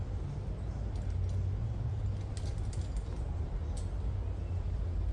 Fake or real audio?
real